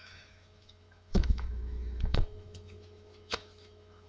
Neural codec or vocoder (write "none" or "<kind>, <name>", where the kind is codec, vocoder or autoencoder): autoencoder, DAC-VAE